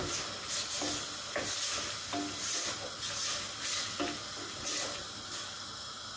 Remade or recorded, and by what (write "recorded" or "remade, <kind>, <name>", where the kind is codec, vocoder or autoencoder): recorded